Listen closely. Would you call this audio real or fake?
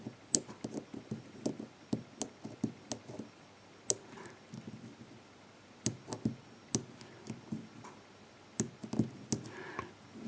real